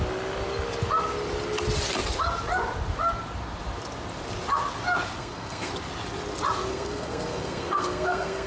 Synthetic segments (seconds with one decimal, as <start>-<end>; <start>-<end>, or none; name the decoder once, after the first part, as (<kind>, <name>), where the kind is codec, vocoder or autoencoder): 5.2-5.7 (codec, SNAC); 6.7-8.5